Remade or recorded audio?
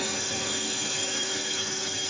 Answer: remade